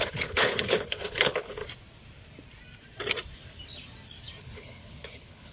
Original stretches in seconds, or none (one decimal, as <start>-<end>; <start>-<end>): 1.6-4.4